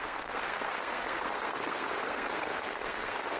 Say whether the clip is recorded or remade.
remade